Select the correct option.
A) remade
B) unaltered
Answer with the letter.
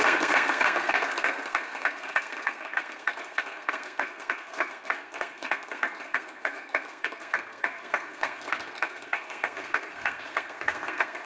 A